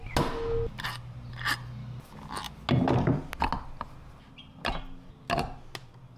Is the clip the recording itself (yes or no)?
yes